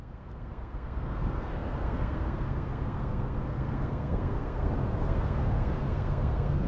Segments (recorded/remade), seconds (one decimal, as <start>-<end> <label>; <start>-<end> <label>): 0.0-6.7 remade